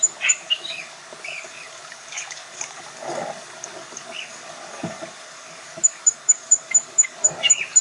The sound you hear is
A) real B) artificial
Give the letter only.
B